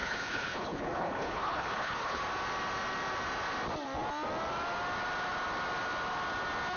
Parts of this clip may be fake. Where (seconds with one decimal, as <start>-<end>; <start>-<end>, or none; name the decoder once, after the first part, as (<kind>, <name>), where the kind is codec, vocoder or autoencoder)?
0.0-2.2 (codec, HILCodec)